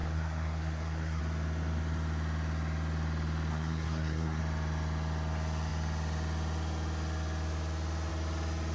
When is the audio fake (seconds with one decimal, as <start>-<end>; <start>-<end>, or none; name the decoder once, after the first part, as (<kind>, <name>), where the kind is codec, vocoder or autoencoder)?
0.0-1.2 (codec, SNAC); 3.5-4.4